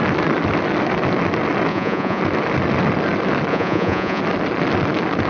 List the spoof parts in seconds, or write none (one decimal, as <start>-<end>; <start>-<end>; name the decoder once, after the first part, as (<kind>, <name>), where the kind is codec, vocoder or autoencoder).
1.7-2.2 (vocoder, Vocos); 3.5-4.2